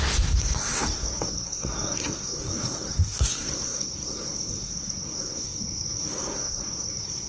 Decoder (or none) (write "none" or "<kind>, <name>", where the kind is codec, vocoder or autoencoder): codec, SNAC